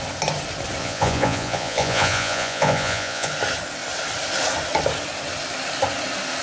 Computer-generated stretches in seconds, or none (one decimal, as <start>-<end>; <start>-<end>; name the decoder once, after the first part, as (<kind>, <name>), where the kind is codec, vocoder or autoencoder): 0.8-3.3 (vocoder, Vocos)